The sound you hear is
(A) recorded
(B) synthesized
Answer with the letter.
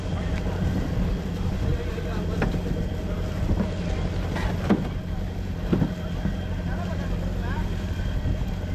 A